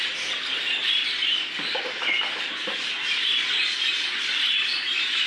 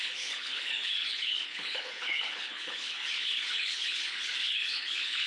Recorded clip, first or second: first